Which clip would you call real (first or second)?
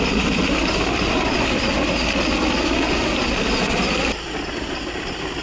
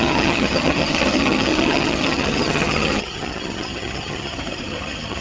first